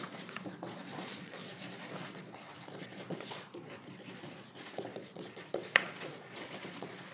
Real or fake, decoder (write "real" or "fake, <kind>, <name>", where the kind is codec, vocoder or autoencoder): fake, vocoder, Vocos